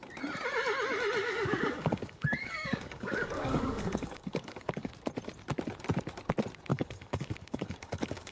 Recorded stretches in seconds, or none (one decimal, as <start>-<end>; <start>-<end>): 0.0-1.2; 4.9-6.7